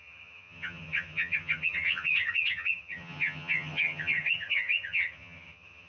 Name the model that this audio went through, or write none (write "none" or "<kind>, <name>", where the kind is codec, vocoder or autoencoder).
vocoder, HiFi-GAN